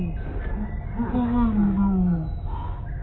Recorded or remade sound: recorded